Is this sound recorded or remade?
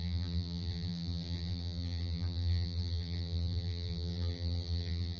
remade